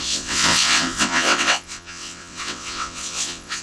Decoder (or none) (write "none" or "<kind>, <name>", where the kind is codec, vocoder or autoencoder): vocoder, WaveNeXt